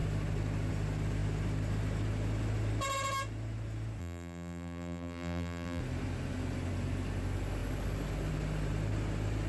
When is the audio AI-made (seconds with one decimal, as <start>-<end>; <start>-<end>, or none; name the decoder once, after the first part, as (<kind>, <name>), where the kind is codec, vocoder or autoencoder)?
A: 4.0-5.8 (vocoder, BigVGAN v2)